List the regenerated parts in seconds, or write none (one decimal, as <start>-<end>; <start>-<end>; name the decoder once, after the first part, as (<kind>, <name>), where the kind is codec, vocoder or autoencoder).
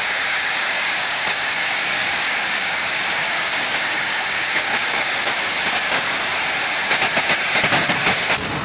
0.0-6.3 (codec, DAC)